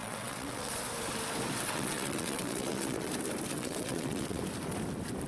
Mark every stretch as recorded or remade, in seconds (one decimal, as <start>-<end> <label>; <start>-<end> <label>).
0.0-0.7 remade; 0.7-1.6 recorded; 1.6-3.1 remade; 3.1-3.5 recorded; 3.5-4.4 remade; 4.4-5.3 recorded